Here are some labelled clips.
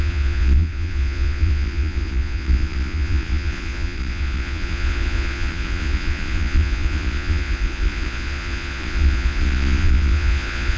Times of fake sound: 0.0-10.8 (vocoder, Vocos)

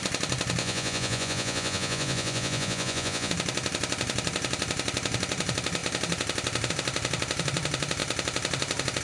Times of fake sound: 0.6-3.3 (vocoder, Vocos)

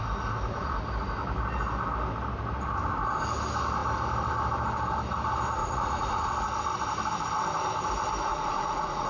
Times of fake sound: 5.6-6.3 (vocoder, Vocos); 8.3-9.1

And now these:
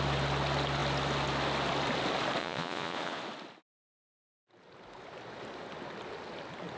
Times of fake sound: 2.4-3.2 (vocoder, Vocos)